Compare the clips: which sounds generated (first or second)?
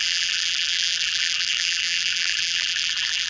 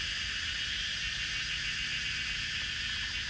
first